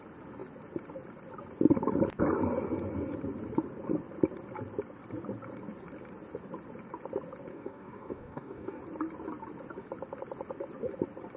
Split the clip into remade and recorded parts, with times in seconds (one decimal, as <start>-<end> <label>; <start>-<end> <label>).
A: 0.0-7.5 recorded; 7.5-8.8 remade; 8.8-11.4 recorded